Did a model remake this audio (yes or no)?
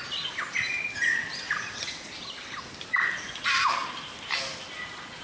no